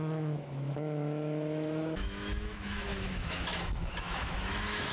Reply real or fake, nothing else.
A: fake